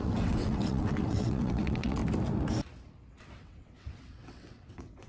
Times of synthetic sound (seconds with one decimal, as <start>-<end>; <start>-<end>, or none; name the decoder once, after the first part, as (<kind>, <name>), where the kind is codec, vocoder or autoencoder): 0.0-2.0 (vocoder, WaveNeXt); 3.2-5.1

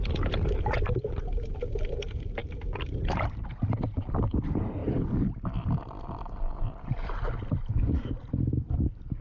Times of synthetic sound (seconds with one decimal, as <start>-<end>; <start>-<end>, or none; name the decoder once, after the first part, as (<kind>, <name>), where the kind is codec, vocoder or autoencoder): none

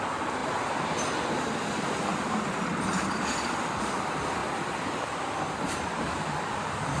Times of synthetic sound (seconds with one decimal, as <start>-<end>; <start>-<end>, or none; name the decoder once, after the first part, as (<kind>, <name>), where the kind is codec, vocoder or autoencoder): none

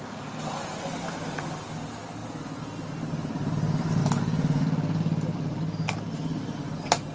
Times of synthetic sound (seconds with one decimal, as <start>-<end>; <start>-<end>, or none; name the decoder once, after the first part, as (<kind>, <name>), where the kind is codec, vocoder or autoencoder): none

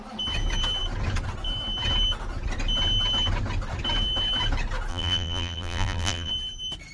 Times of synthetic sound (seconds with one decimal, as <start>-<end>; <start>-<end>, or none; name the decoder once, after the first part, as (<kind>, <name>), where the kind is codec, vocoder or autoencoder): 4.9-6.3 (vocoder, BigVGAN v2)

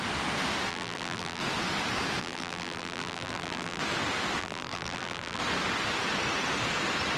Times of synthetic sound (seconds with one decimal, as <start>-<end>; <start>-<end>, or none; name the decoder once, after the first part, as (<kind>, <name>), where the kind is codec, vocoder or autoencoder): 0.7-1.4 (vocoder, BigVGAN v2); 2.2-3.8; 4.4-5.4

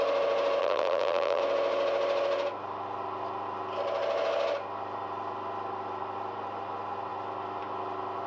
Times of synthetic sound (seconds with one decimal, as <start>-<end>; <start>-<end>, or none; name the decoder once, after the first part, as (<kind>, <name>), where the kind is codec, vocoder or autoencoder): 0.6-1.4 (vocoder, BigVGAN v2)

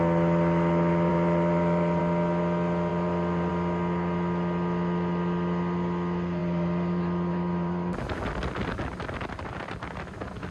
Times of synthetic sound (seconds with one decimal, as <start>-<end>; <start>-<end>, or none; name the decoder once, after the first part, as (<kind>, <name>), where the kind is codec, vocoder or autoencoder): 1.1-2.0 (vocoder, BigVGAN v2); 2.9-3.5; 6.4-8.0